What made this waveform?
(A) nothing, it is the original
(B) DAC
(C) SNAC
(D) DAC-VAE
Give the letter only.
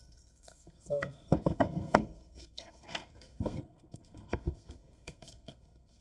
C